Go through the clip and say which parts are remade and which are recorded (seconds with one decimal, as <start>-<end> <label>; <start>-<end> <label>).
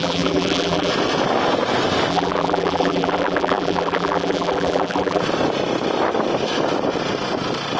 0.0-0.9 remade; 0.9-2.1 recorded; 2.1-5.2 remade; 5.2-7.8 recorded